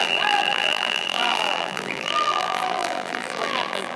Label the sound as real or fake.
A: fake